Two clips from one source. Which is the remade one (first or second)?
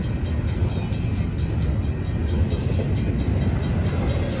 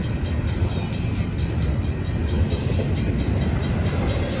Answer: second